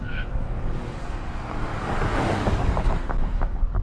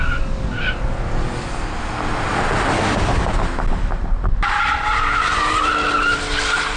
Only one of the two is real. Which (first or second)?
second